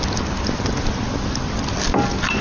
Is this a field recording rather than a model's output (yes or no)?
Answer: yes